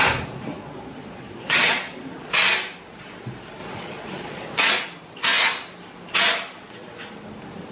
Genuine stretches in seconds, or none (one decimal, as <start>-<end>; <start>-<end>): 0.0-0.5; 2.0-3.6; 4.6-7.7